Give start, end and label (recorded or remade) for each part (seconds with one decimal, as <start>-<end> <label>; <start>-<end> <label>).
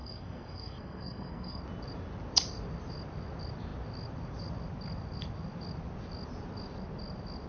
0.0-1.6 remade; 1.6-7.5 recorded